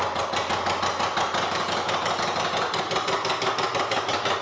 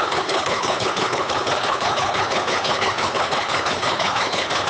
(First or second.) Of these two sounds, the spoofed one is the second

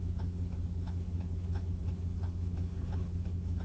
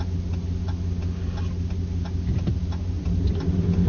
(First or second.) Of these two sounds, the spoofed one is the first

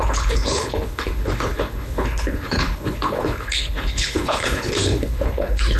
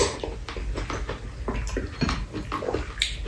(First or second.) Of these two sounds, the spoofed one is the first